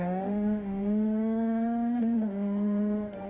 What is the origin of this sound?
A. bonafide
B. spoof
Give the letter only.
B